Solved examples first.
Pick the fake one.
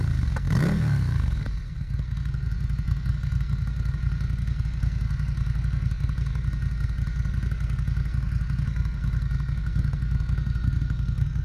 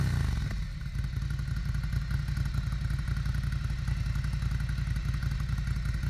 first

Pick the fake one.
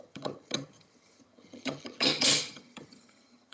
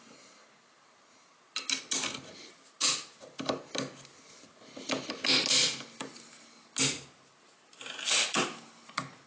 first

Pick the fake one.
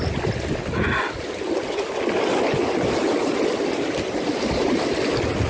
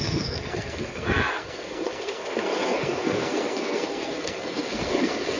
second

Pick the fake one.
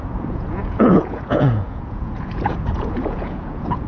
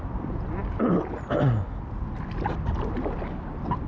first